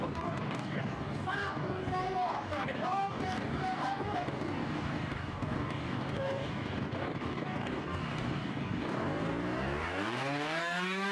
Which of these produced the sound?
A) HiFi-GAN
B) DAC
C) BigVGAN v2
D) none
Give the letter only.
B